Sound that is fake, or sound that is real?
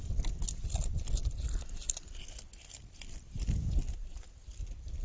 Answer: real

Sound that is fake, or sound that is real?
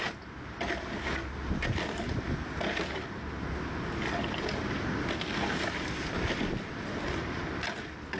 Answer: real